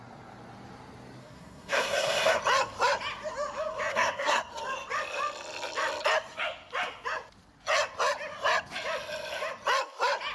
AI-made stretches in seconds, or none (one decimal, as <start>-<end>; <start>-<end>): 1.2-2.4; 3.9-4.5